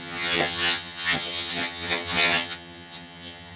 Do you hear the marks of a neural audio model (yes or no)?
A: yes